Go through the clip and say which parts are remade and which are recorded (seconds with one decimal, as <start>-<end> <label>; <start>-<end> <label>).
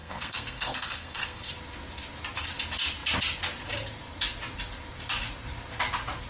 0.0-1.5 remade; 1.5-6.3 recorded